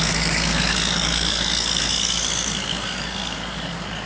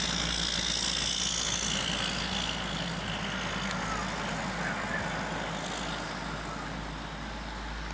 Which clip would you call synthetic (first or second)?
first